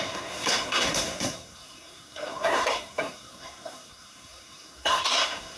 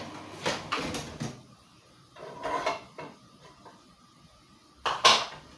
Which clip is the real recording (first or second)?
second